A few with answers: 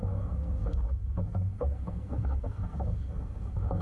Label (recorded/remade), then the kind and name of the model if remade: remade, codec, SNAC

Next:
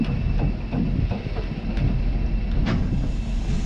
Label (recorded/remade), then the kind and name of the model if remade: recorded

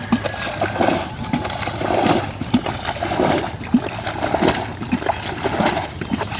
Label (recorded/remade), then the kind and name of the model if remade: recorded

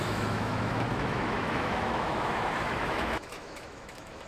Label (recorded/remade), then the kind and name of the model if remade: remade, autoencoder, DAC-VAE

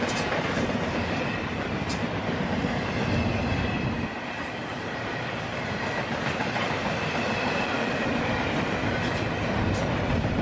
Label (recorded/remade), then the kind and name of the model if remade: remade, vocoder, BigVGAN v2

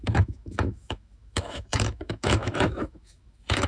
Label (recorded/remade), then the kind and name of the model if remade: remade, autoencoder, DAC-VAE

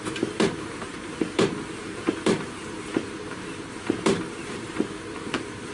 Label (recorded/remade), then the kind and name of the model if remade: remade, vocoder, BigVGAN v2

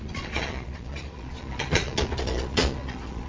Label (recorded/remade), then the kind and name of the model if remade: remade, vocoder, Vocos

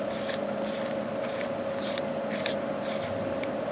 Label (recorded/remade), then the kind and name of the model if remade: recorded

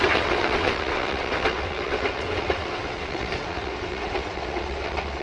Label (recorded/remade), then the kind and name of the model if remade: remade, vocoder, WaveNeXt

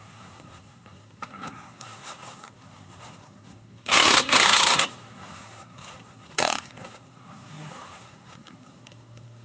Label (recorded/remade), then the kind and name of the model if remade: remade, codec, SNAC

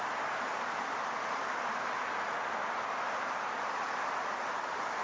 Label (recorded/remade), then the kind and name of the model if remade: recorded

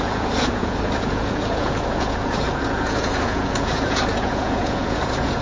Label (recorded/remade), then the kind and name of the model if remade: remade, vocoder, Vocos